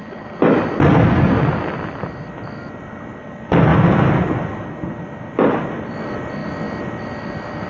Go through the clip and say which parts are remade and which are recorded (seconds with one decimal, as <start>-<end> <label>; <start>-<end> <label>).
0.0-3.7 remade; 3.7-4.4 recorded; 4.4-7.7 remade